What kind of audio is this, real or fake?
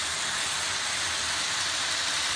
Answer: real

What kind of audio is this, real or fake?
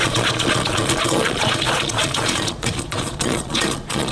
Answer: fake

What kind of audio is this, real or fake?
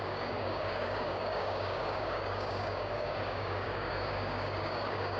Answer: fake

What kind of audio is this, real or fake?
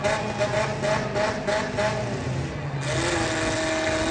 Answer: real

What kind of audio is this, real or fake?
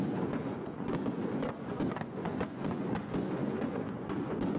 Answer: fake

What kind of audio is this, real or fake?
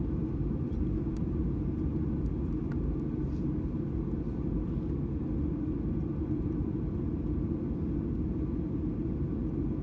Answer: real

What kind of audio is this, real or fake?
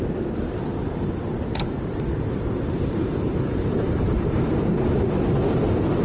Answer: fake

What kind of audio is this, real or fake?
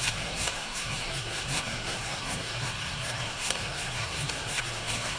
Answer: fake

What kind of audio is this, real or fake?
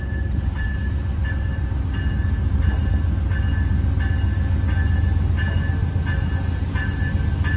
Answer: real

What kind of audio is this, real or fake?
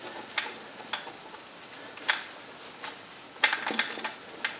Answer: real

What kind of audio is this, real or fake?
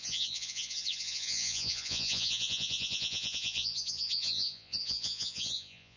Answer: fake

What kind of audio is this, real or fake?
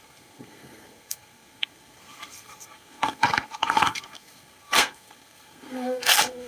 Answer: fake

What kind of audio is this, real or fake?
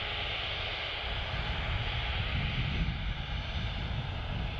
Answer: real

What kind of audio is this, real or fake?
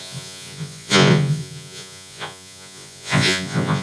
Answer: fake